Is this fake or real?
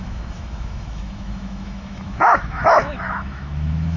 fake